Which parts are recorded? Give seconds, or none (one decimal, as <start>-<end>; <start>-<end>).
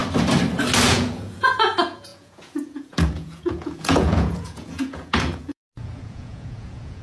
0.0-0.9